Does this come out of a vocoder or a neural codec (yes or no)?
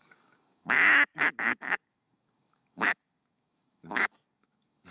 yes